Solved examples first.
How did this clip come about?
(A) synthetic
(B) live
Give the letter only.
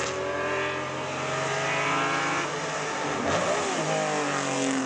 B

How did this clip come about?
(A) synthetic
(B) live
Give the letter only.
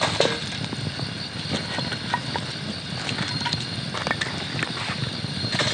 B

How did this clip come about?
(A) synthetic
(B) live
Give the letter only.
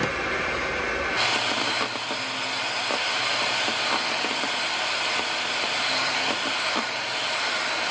B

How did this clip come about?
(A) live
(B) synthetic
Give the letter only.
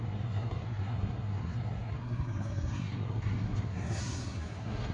B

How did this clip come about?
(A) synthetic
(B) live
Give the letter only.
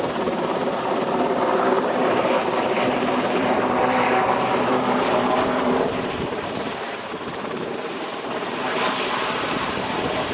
A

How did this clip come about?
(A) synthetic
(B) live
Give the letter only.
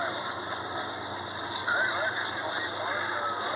B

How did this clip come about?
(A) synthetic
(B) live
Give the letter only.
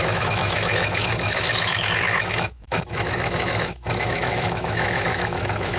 A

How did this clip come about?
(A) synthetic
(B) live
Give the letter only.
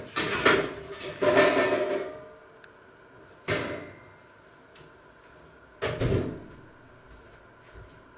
B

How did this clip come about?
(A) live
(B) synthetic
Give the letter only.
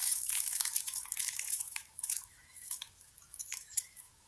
B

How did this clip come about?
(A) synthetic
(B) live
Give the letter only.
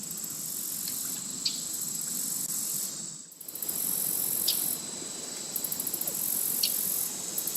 B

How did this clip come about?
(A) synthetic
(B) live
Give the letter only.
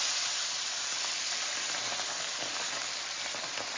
B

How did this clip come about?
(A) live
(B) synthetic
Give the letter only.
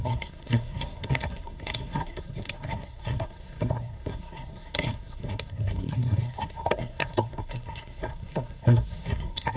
B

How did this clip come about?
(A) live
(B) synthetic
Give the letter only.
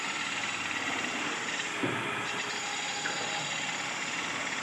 A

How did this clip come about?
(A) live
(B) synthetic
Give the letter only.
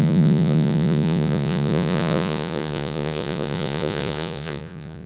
B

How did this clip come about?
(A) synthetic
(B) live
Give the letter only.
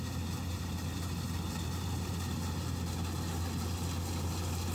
B